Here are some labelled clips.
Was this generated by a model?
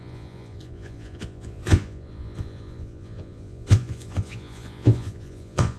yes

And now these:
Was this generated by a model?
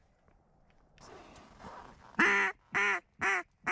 no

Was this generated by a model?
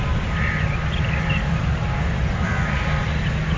no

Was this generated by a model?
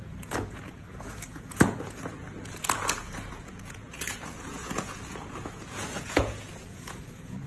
yes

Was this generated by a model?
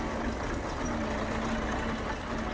no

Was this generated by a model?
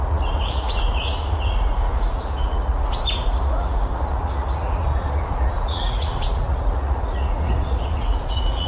yes